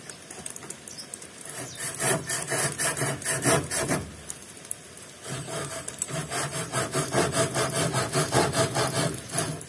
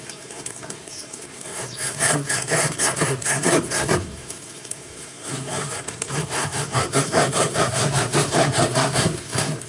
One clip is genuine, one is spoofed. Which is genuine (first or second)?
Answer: first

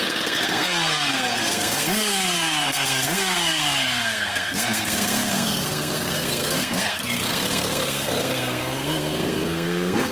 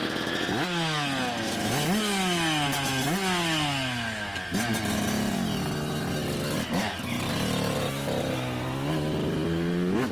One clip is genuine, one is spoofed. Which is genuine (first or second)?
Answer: second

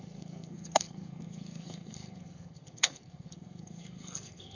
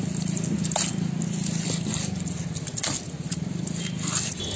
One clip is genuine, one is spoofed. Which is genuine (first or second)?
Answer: second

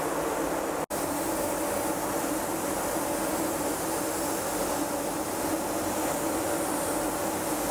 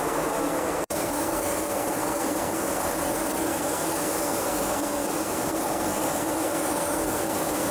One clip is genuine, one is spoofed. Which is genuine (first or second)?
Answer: first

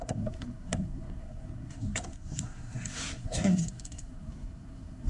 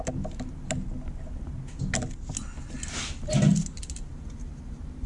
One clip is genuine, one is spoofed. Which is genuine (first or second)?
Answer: second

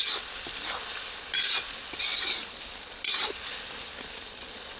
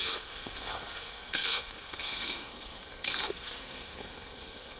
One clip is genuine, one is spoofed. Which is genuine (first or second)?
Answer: first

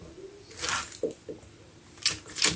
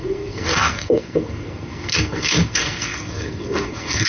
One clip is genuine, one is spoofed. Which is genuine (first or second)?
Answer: first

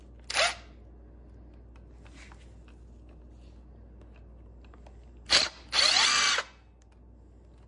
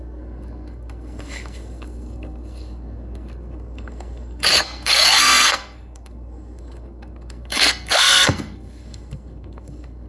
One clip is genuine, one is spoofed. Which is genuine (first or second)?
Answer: first